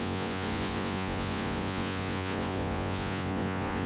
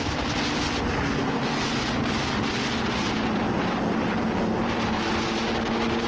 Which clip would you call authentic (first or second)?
second